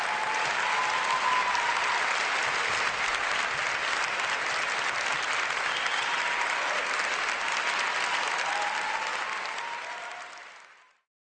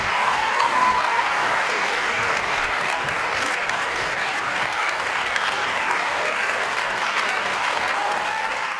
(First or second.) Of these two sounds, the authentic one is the first